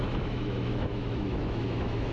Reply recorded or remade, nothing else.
remade